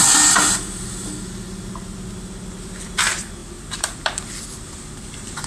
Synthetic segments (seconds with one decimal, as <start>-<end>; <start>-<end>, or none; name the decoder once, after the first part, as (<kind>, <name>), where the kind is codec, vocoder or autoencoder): 3.4-5.5 (vocoder, BigVGAN v2)

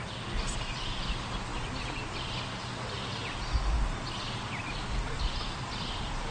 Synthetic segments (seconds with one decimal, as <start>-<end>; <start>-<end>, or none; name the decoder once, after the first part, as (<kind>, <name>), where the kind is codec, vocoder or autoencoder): none

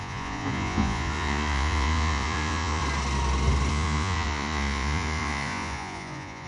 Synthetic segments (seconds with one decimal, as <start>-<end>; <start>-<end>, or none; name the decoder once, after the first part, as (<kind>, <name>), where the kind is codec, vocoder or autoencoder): 0.0-2.8 (vocoder, Vocos); 3.7-6.5